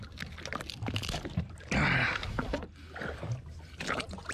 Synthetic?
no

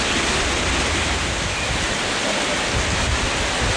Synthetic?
no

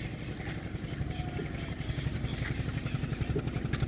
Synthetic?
no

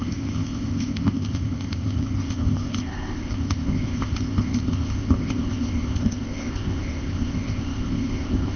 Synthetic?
yes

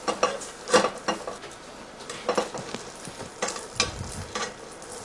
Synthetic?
no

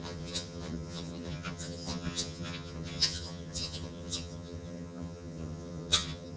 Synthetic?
yes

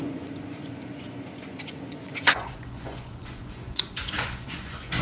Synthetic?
yes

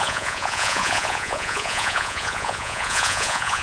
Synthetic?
yes